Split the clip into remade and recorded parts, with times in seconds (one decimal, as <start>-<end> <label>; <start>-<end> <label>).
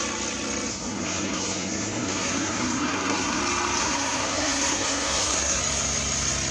0.0-0.7 recorded; 0.7-3.4 remade; 3.4-3.8 recorded; 3.8-5.6 remade; 5.6-6.5 recorded